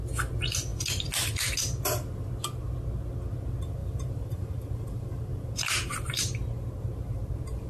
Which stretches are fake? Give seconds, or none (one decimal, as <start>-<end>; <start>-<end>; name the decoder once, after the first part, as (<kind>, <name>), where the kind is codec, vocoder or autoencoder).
3.8-7.3 (vocoder, BigVGAN v2)